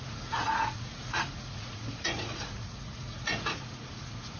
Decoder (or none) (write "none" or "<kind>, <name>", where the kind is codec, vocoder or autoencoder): vocoder, Vocos